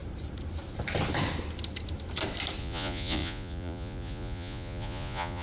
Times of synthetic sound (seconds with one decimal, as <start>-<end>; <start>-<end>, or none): 2.6-5.4